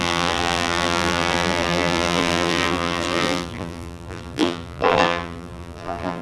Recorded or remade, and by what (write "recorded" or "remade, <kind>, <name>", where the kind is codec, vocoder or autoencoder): remade, vocoder, BigVGAN v2